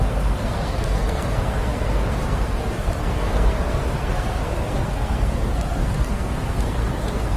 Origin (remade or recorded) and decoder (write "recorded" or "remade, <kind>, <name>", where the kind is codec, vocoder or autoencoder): remade, codec, SNAC